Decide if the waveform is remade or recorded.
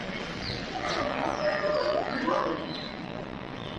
remade